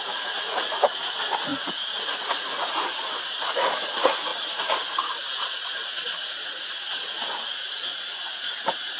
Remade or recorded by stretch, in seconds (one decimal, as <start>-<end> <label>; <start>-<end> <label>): 0.0-9.0 remade